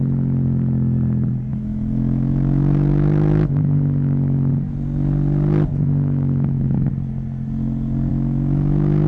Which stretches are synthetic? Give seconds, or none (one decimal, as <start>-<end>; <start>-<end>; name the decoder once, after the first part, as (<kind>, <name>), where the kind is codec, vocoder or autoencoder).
1.5-4.5 (autoencoder, DAC-VAE); 5.7-6.9; 8.1-9.1